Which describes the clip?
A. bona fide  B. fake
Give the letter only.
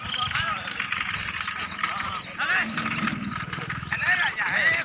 A